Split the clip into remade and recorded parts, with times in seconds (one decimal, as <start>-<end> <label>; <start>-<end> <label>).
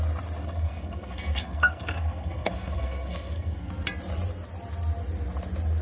0.0-0.4 recorded; 0.4-3.7 remade; 3.7-5.8 recorded